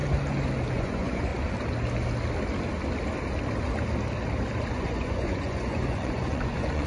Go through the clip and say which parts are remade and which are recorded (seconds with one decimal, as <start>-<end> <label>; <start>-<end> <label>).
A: 0.0-0.7 recorded; 0.7-1.3 remade; 1.3-4.7 recorded; 4.7-6.9 remade